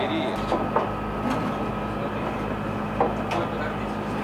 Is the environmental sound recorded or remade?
recorded